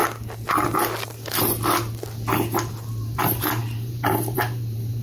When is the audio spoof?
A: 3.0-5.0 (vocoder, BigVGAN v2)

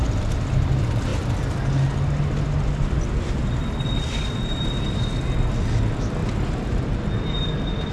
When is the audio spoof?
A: none

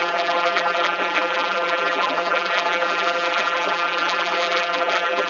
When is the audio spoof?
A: 0.0-5.3 (vocoder, BigVGAN v2)